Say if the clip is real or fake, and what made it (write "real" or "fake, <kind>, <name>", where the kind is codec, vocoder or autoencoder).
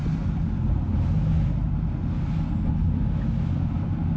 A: real